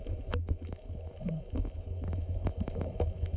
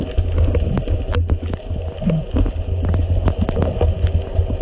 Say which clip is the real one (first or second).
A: second